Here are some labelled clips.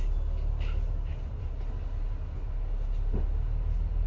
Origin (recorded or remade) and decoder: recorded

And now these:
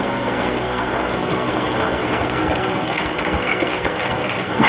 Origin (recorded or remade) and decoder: remade, codec, SNAC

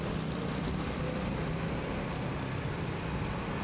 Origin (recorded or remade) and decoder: recorded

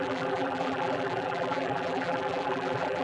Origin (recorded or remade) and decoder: remade, vocoder, BigVGAN v2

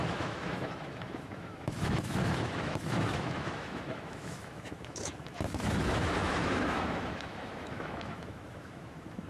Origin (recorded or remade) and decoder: remade, autoencoder, DAC-VAE